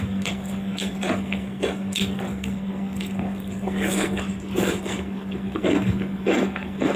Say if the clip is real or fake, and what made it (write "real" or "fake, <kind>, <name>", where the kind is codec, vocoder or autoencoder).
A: fake, codec, SNAC